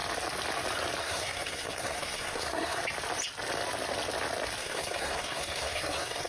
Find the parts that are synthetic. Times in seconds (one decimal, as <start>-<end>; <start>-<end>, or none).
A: 1.0-2.8; 4.6-6.3